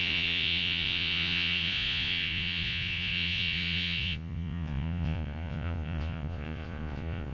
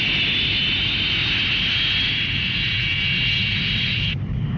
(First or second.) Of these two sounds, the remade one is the first